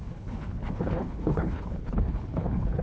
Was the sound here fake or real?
fake